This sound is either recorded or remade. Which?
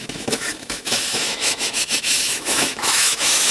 remade